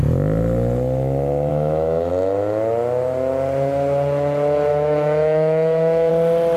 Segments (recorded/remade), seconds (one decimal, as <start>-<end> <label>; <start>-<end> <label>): 0.0-1.5 recorded; 1.5-2.1 remade; 2.1-4.7 recorded; 4.7-6.1 remade; 6.1-6.6 recorded